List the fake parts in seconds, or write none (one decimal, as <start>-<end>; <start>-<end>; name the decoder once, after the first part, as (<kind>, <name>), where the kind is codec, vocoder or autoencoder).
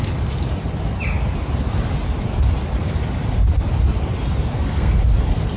4.5-5.0 (codec, SNAC)